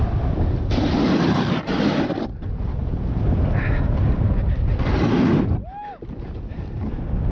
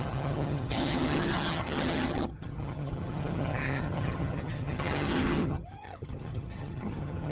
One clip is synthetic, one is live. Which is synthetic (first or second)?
second